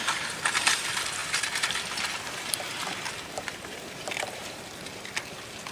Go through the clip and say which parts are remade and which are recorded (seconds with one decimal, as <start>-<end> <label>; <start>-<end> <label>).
0.0-1.2 recorded; 1.2-4.6 remade; 4.6-5.7 recorded

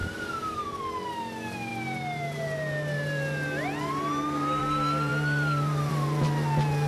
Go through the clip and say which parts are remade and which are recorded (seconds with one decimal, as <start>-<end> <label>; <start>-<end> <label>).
0.0-0.8 remade; 0.8-6.9 recorded

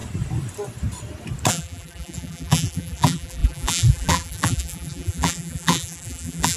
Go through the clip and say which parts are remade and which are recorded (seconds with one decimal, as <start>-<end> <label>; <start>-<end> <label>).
0.0-1.5 recorded; 1.5-6.6 remade

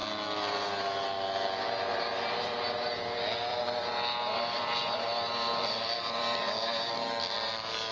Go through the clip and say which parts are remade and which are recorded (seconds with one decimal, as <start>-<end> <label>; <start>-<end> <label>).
0.0-1.9 recorded; 1.9-2.5 remade; 2.5-3.5 recorded; 3.5-6.9 remade; 6.9-7.9 recorded

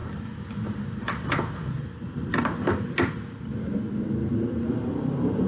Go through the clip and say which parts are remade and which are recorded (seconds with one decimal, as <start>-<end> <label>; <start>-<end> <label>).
0.0-2.3 remade; 2.3-4.7 recorded; 4.7-5.5 remade